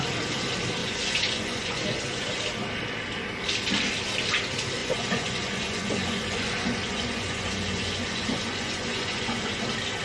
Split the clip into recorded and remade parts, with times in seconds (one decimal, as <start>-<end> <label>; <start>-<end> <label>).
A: 0.0-0.8 recorded; 0.8-2.4 remade; 2.4-4.8 recorded; 4.8-9.6 remade; 9.6-10.0 recorded